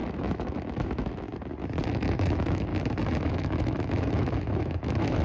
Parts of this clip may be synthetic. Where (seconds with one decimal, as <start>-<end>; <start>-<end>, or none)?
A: 0.0-1.3; 1.9-2.7; 3.3-5.2